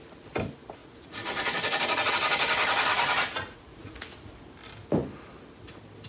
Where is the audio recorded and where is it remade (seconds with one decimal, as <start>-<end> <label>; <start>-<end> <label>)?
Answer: 0.0-0.8 recorded; 0.8-2.1 remade; 2.1-2.9 recorded; 2.9-4.3 remade; 4.3-6.1 recorded